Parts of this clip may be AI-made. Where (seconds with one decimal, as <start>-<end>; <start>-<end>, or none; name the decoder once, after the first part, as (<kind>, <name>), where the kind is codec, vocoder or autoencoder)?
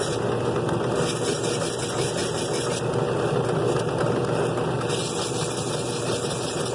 none